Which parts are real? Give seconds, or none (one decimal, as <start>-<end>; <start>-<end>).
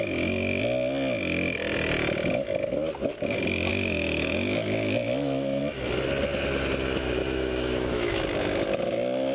0.0-3.7; 5.6-7.2; 8.1-9.3